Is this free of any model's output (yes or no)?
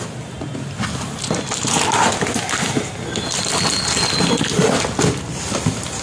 yes